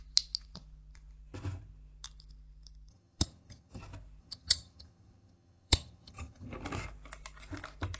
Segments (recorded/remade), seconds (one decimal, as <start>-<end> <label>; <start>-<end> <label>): 0.0-2.9 recorded; 2.9-3.8 remade; 3.8-4.2 recorded; 4.2-6.5 remade; 6.5-8.0 recorded